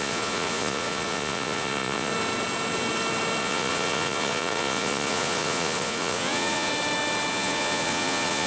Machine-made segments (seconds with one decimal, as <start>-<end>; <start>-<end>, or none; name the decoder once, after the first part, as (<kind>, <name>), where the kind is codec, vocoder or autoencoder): 0.0-2.1 (vocoder, Vocos); 3.4-6.7; 7.3-8.5